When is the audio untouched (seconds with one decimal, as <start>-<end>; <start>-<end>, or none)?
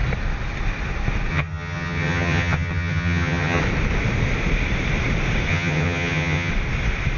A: 0.0-1.3; 3.6-5.5; 6.5-7.2